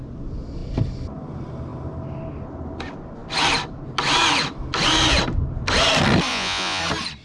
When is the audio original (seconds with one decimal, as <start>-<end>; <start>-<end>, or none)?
0.0-6.3; 6.8-7.2